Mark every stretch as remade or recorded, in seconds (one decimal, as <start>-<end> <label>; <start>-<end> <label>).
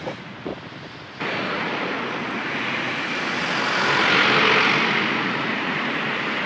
0.0-0.5 remade; 0.5-1.2 recorded; 1.2-3.4 remade; 3.4-5.2 recorded; 5.2-6.5 remade